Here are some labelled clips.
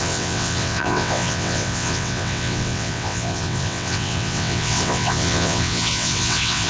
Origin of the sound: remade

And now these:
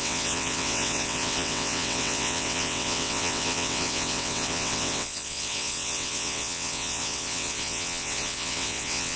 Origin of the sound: remade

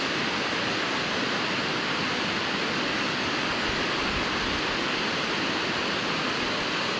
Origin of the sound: recorded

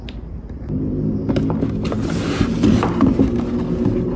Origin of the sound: recorded